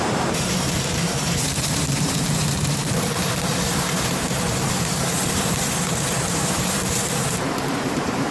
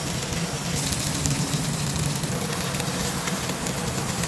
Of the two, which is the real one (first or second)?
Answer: second